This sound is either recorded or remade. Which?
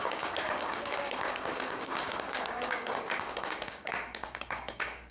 remade